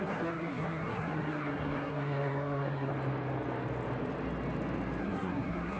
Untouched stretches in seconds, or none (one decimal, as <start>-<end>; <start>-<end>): 2.9-5.0